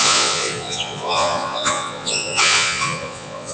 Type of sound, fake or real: fake